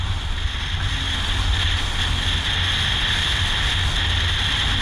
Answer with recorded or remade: recorded